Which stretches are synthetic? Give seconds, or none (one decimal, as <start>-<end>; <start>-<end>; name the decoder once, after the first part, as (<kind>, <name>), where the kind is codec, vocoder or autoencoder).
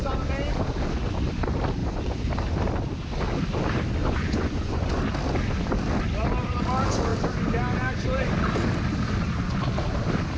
1.8-2.3 (vocoder, Vocos); 4.0-5.0